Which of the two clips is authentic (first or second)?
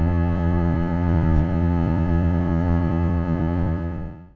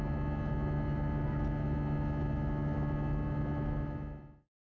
second